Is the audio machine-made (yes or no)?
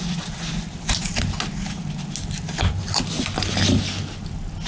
no